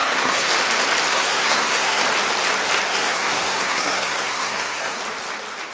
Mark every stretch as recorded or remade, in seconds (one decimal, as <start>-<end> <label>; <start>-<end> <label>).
0.0-0.5 remade; 0.5-1.1 recorded; 1.1-2.0 remade; 2.0-2.9 recorded; 2.9-5.0 remade; 5.0-5.7 recorded